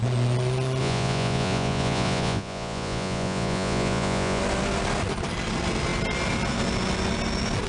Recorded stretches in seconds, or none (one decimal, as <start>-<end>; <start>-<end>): 0.0-0.8; 4.4-7.7